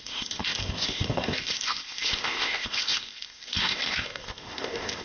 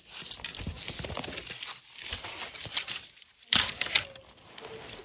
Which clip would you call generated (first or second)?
first